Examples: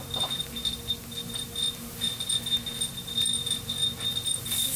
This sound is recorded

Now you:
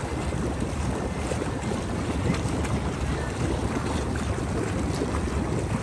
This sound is recorded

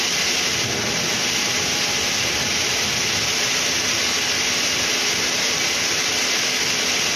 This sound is recorded